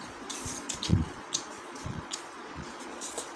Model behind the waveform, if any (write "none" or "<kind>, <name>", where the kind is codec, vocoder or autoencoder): vocoder, Vocos